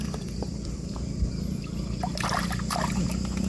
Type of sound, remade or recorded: recorded